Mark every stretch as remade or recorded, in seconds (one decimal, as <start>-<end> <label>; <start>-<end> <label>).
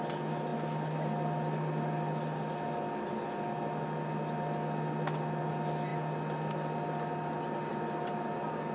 0.0-8.7 recorded